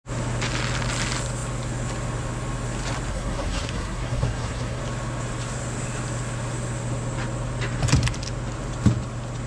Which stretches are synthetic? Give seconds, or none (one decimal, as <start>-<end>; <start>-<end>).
3.1-4.8